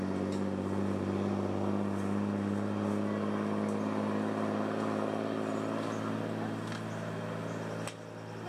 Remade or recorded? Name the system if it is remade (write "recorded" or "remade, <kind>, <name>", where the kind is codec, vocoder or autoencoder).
recorded